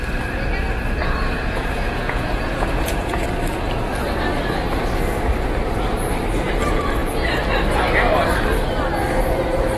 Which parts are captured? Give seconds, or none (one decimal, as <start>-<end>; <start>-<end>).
0.0-1.0; 3.2-9.8